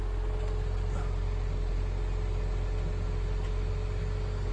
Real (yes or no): yes